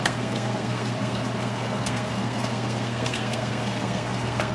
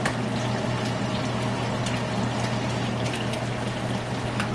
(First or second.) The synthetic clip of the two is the first